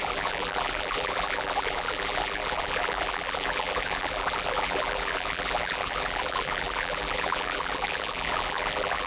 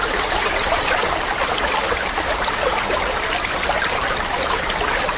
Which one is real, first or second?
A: second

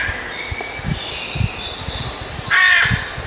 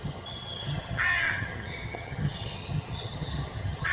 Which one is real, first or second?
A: first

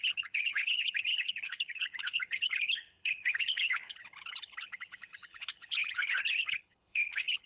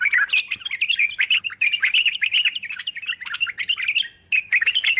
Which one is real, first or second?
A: second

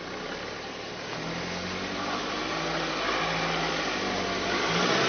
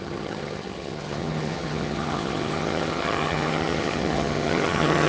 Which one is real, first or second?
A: first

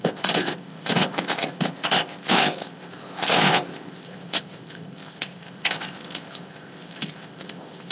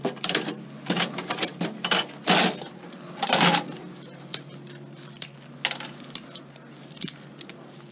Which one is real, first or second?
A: second